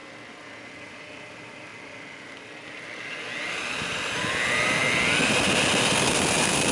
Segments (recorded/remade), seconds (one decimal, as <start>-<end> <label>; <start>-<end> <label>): 0.0-0.7 recorded; 0.7-4.8 remade; 4.8-5.7 recorded; 5.7-6.7 remade